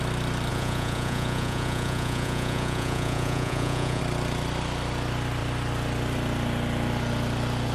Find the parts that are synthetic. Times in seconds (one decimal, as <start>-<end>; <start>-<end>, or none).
0.5-4.0